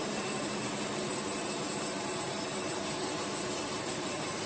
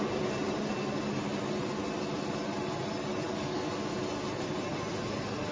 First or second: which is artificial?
first